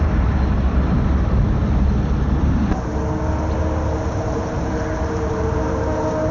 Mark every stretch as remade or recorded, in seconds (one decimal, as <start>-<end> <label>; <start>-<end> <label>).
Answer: 0.0-1.6 remade; 1.6-2.4 recorded; 2.4-3.0 remade; 3.0-4.1 recorded; 4.1-6.3 remade